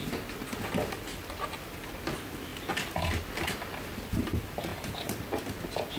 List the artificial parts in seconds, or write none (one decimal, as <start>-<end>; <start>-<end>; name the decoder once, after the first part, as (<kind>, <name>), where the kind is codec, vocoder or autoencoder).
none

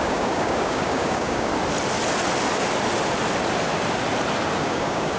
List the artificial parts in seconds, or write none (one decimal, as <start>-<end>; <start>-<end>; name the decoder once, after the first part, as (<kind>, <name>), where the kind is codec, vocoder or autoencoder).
0.0-1.5 (codec, DAC); 4.6-5.2

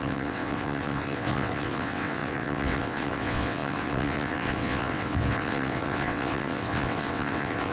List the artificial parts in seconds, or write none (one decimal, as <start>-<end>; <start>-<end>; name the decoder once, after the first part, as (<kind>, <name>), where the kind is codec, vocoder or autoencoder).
0.0-7.7 (vocoder, WaveNeXt)

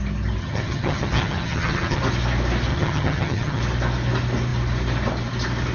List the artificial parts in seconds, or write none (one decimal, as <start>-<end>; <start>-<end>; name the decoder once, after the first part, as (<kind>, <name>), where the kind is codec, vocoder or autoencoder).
0.4-2.0 (vocoder, HiFi-GAN); 2.7-3.6

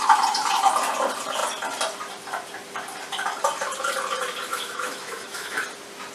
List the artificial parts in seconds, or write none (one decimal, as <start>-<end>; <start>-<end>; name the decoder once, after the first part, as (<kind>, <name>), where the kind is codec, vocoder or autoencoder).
4.5-5.6 (autoencoder, DAC-VAE)